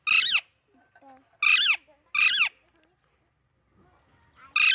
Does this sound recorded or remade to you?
recorded